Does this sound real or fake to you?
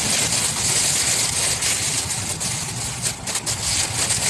real